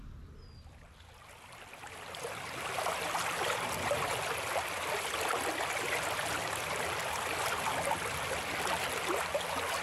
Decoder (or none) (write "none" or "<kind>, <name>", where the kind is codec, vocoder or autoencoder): none